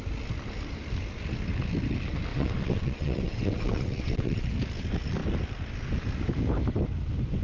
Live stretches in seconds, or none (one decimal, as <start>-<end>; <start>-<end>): 0.0-2.3; 4.5-7.4